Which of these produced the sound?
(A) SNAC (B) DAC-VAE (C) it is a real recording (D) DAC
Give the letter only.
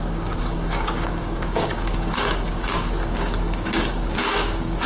D